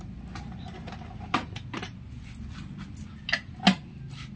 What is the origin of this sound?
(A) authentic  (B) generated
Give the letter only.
A